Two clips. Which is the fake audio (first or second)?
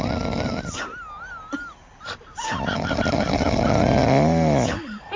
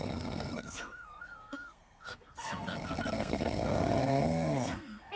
second